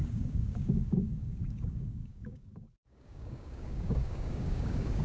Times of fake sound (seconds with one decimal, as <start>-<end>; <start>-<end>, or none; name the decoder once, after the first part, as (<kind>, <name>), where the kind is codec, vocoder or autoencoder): 0.0-5.0 (codec, DAC)